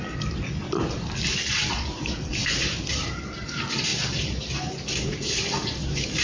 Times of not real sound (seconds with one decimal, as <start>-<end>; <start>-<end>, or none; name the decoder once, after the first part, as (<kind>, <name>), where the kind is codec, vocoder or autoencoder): none